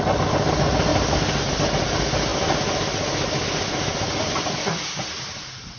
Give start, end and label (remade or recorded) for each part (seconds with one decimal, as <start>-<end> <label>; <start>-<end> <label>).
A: 0.0-5.8 recorded

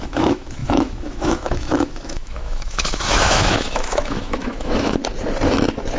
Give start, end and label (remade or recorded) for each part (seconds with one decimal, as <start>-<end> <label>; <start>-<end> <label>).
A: 0.0-5.0 remade; 5.0-6.0 recorded

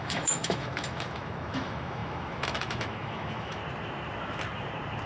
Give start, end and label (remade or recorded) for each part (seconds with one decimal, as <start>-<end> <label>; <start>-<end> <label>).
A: 0.0-3.6 remade; 3.6-5.1 recorded

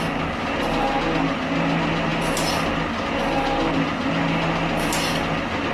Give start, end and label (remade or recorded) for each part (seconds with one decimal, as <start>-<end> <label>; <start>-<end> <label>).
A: 0.0-5.7 recorded

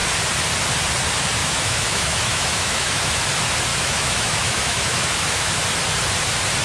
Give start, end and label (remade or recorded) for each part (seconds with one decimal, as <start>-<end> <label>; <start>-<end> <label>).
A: 0.0-1.4 recorded; 1.4-3.2 remade; 3.2-3.7 recorded; 3.7-5.5 remade; 5.5-6.6 recorded